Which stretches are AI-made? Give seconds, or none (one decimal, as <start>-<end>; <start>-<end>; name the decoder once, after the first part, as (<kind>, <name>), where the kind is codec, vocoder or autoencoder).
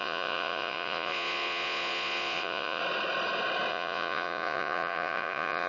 0.0-2.8 (vocoder, Vocos); 3.7-5.7